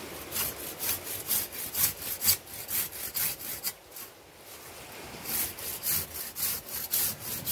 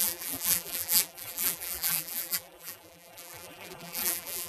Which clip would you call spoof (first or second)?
second